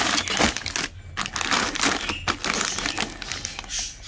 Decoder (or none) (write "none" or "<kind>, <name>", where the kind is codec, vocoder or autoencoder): none